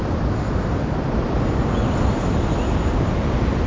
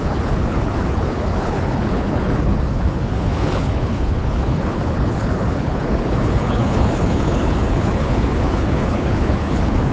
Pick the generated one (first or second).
second